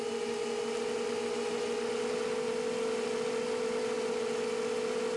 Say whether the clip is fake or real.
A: real